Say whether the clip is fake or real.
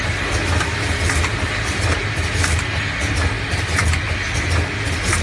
real